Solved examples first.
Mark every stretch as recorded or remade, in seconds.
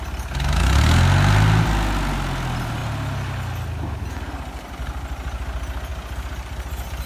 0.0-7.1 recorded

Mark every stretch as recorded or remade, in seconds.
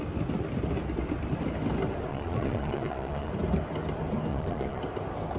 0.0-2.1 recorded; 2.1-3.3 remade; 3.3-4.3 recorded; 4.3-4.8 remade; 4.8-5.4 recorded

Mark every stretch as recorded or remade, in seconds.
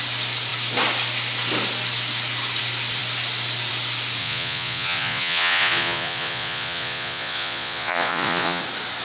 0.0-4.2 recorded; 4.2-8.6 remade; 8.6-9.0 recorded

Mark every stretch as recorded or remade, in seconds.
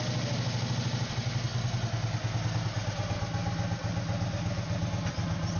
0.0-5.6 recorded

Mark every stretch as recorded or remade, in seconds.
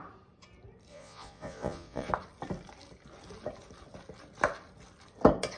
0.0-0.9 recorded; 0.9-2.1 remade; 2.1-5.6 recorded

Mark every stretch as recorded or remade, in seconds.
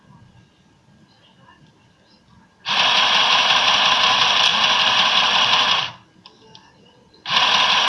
0.0-7.9 recorded